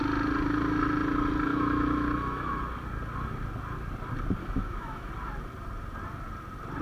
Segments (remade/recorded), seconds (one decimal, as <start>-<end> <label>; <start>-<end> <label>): 0.0-1.5 recorded; 1.5-2.6 remade; 2.6-4.4 recorded; 4.4-5.1 remade; 5.1-6.8 recorded